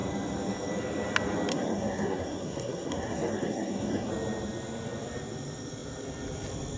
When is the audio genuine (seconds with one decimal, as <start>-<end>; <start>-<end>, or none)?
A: 0.0-1.5; 4.1-6.8